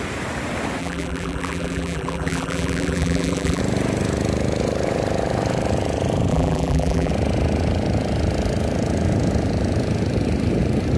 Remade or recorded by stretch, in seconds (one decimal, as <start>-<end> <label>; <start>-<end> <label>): 0.0-0.8 recorded; 0.8-3.6 remade; 3.6-6.3 recorded; 6.3-7.1 remade; 7.1-11.0 recorded